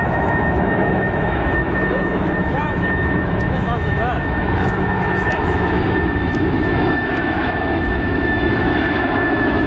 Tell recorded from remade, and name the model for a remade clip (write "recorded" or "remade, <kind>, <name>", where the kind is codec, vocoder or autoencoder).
remade, autoencoder, DAC-VAE